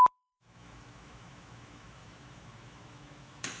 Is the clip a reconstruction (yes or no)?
yes